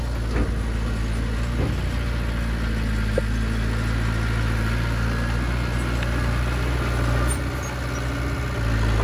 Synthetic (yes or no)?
no